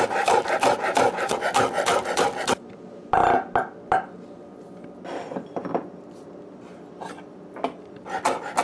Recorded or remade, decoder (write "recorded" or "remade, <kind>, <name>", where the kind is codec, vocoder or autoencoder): recorded